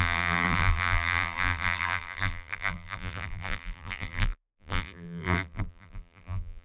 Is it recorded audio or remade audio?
remade